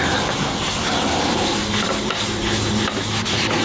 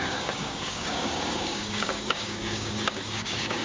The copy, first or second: second